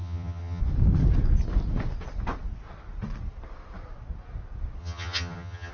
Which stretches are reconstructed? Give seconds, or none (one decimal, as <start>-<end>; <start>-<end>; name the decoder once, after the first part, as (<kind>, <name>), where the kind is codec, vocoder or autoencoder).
0.0-0.6 (vocoder, HiFi-GAN); 4.8-5.7